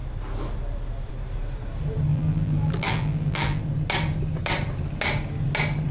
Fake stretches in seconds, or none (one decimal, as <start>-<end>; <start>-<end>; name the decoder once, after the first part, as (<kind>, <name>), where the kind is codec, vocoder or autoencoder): 2.1-3.6 (vocoder, BigVGAN v2)